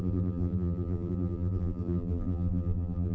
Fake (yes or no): yes